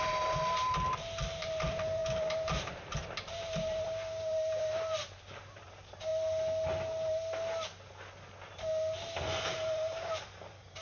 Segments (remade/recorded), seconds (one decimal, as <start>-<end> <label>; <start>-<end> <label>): 0.0-6.1 remade; 6.1-9.4 recorded; 9.4-10.8 remade